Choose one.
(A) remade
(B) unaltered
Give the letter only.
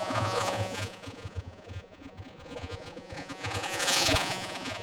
A